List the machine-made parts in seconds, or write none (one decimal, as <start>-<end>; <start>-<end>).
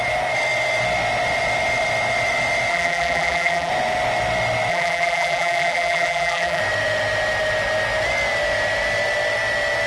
2.7-3.7; 4.7-6.6